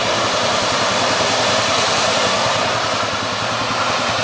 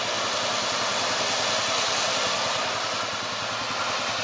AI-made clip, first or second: first